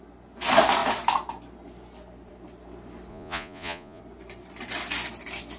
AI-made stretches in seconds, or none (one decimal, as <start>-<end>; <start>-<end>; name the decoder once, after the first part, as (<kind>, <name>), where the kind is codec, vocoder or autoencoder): 3.1-4.0 (vocoder, Vocos)